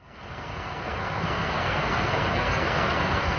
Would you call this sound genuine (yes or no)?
no